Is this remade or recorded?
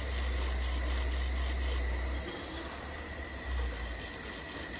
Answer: recorded